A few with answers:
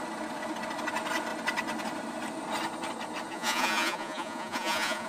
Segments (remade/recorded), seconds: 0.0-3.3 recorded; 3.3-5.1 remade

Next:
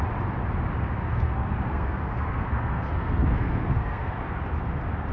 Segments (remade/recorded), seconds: 0.0-1.0 recorded; 1.0-4.1 remade; 4.1-5.1 recorded

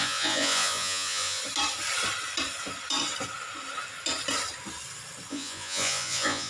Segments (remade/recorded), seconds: 0.0-1.4 remade; 1.4-5.3 recorded; 5.3-6.5 remade

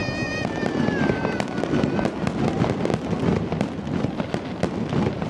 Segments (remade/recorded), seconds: 0.0-5.3 recorded

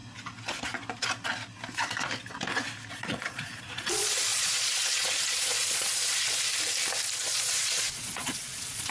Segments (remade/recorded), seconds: 0.0-2.9 recorded; 2.9-6.5 remade; 6.5-7.2 recorded; 7.2-8.9 remade